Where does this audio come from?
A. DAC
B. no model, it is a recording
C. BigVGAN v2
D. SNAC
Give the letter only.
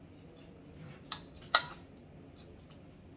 B